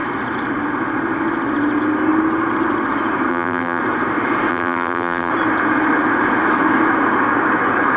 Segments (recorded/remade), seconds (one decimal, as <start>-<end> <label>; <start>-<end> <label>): 0.0-3.3 recorded; 3.3-3.8 remade; 3.8-4.5 recorded; 4.5-5.3 remade; 5.3-8.0 recorded